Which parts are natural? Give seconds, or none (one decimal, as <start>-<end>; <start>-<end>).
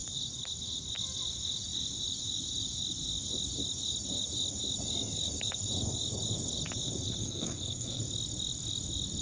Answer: 0.0-7.2; 8.0-9.2